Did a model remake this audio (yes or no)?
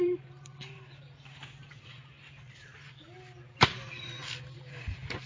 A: yes